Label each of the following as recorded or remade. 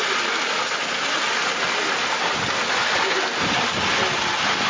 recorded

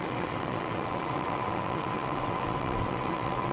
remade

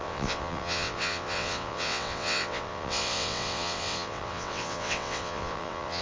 remade